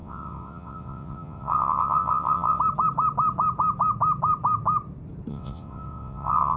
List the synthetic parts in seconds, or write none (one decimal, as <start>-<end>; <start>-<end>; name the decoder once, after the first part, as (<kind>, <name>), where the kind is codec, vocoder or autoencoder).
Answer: 0.0-2.6 (vocoder, WaveNeXt); 5.3-6.6